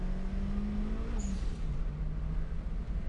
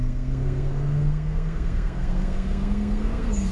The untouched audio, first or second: first